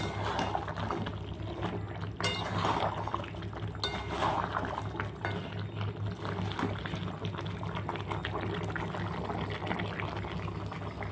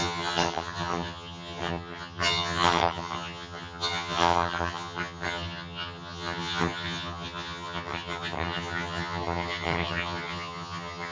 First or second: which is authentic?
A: first